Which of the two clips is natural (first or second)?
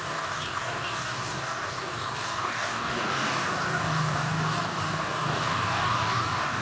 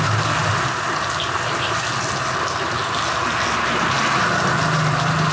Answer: second